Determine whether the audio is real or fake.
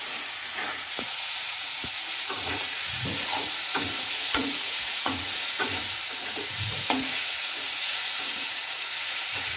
fake